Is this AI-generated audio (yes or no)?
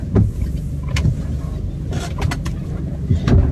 no